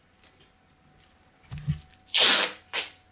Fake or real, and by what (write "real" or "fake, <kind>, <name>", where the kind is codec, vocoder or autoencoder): real